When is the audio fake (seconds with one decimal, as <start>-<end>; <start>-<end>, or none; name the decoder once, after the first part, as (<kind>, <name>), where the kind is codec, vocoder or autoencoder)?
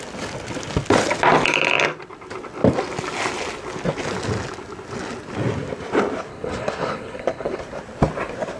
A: 6.3-7.6 (codec, HILCodec)